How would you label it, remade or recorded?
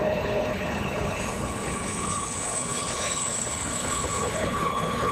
remade